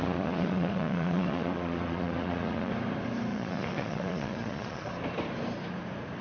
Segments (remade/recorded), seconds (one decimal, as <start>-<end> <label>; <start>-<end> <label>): 0.0-2.7 remade; 2.7-3.3 recorded; 3.3-4.9 remade; 4.9-6.2 recorded